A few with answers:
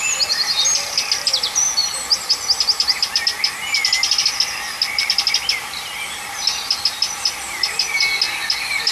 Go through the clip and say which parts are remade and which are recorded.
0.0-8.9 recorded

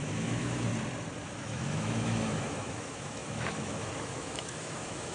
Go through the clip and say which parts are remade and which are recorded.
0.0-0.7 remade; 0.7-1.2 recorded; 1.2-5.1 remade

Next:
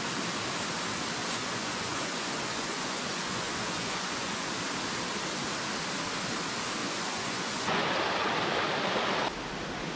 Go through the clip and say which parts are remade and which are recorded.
0.0-1.2 recorded; 1.2-4.5 remade; 4.5-6.8 recorded; 6.8-7.8 remade; 7.8-10.0 recorded

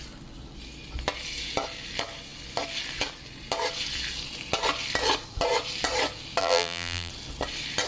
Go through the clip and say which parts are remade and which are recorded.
0.0-6.4 recorded; 6.4-7.1 remade; 7.1-7.9 recorded

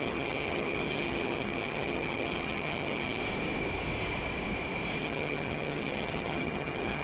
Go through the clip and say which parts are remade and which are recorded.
0.0-3.2 remade; 3.2-5.0 recorded; 5.0-7.0 remade

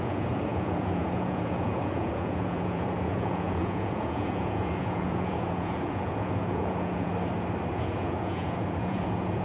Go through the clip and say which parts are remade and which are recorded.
0.0-7.1 remade; 7.1-7.7 recorded; 7.7-9.4 remade

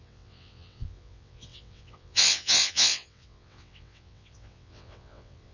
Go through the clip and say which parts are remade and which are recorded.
0.0-5.5 remade